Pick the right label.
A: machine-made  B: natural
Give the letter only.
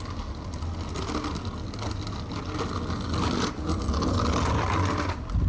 B